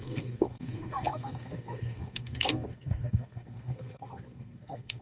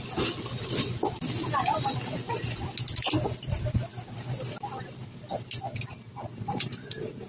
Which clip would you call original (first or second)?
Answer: second